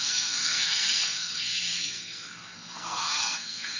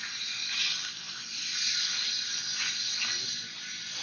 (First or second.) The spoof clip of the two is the first